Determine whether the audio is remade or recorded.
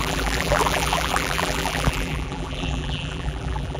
remade